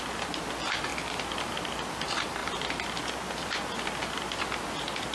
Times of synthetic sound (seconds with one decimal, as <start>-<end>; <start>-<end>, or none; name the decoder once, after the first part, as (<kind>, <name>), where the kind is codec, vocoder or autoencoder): none